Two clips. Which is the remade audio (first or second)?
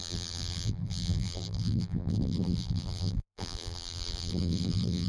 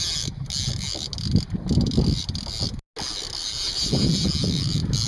first